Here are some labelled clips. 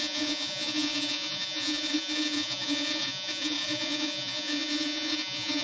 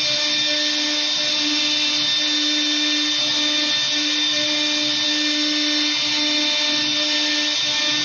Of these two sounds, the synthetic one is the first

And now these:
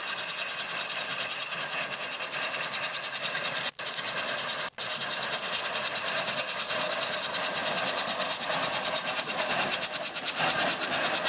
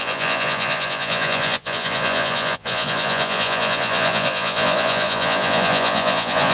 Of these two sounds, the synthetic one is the second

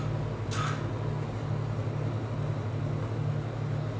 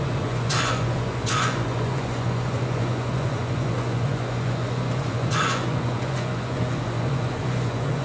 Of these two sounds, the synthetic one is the second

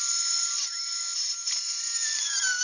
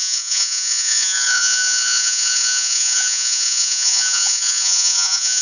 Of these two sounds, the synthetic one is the second